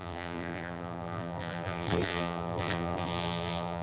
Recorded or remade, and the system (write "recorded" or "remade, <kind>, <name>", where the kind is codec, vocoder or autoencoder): remade, vocoder, BigVGAN v2